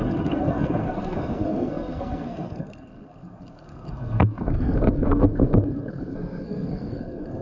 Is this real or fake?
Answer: fake